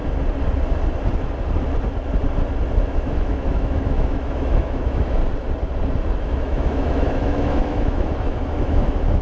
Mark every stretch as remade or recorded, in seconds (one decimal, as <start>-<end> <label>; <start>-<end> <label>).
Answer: 0.0-2.8 recorded; 2.8-5.2 remade; 5.2-6.2 recorded; 6.2-9.2 remade

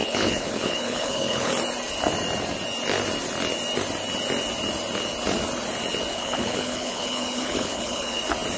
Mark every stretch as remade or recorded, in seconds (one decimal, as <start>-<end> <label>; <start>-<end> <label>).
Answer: 0.0-1.5 remade; 1.5-6.1 recorded; 6.1-8.2 remade; 8.2-8.6 recorded

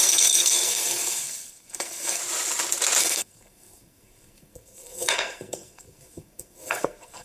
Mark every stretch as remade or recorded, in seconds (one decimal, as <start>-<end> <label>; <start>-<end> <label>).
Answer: 0.0-2.2 remade; 2.2-3.0 recorded; 3.0-7.2 remade